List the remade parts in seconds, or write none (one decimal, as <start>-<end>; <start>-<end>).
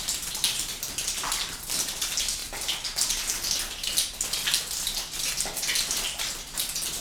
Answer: none